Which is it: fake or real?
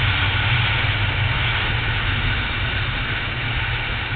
real